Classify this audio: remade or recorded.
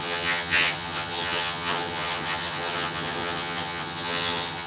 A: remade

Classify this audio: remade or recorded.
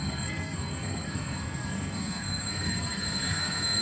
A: remade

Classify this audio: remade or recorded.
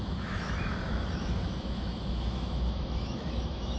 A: remade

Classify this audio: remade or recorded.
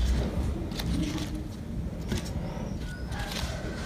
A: recorded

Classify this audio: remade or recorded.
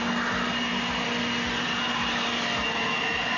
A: recorded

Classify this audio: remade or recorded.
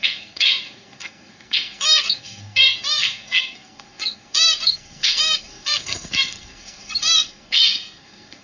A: remade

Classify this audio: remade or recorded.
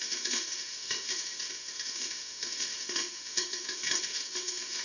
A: remade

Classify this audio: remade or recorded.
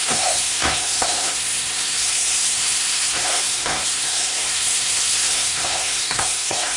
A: remade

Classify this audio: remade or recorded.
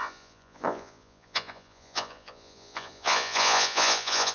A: remade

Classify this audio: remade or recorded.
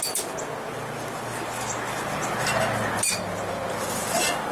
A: recorded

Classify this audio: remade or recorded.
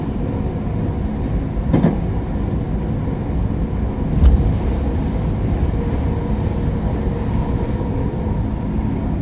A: recorded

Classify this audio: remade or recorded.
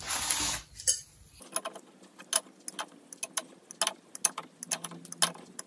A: recorded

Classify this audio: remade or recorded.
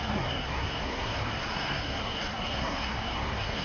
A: remade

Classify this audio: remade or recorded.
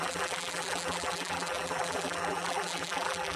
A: remade